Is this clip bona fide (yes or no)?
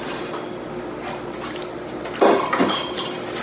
yes